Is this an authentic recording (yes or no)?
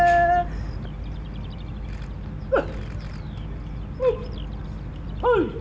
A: yes